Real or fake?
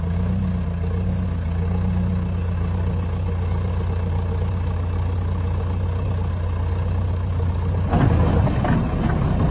real